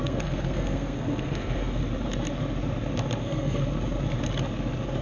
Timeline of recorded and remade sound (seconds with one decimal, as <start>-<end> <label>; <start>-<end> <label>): 0.0-1.8 remade; 1.8-3.2 recorded; 3.2-3.6 remade; 3.6-5.0 recorded